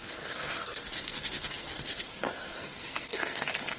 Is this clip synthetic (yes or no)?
yes